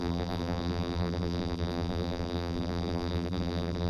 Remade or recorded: remade